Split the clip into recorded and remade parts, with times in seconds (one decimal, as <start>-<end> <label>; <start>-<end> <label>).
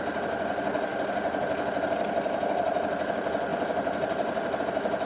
0.0-5.1 recorded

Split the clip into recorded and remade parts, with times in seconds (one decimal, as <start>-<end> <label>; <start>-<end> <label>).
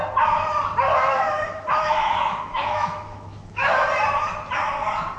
0.0-0.9 recorded; 0.9-3.7 remade; 3.7-5.2 recorded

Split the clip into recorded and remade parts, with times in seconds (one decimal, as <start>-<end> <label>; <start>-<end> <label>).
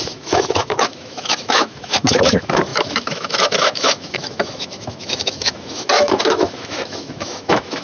0.0-7.8 remade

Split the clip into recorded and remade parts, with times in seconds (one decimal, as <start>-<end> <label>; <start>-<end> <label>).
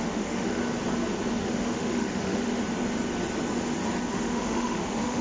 0.0-0.6 remade; 0.6-1.4 recorded; 1.4-2.6 remade; 2.6-4.1 recorded; 4.1-5.2 remade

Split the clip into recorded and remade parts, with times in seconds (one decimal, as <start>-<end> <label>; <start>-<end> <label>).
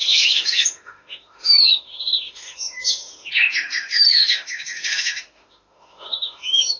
0.0-6.8 remade